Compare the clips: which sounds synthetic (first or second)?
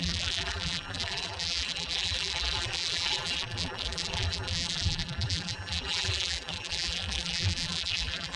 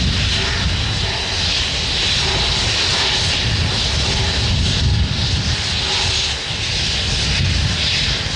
first